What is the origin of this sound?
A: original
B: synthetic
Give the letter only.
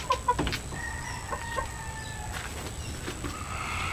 A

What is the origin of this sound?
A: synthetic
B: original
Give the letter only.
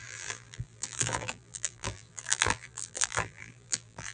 A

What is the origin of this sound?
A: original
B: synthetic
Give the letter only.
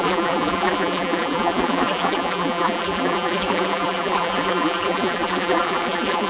B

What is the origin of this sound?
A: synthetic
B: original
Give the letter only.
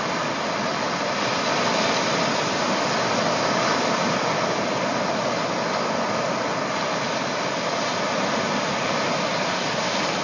B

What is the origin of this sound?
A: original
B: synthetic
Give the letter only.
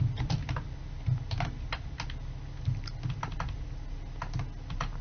A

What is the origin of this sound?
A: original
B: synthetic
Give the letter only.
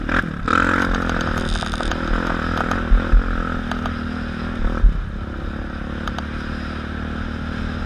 A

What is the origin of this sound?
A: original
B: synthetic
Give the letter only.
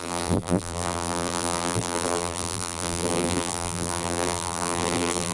B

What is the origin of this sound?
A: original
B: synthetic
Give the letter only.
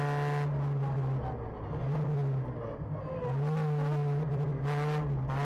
A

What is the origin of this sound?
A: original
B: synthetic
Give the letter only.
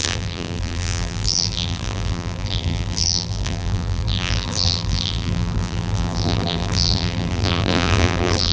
B